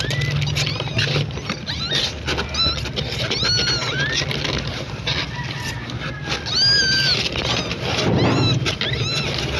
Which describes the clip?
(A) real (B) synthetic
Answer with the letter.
A